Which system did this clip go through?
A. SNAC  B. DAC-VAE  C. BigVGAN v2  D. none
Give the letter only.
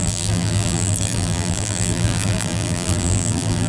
C